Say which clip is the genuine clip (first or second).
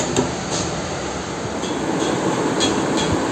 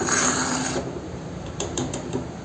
first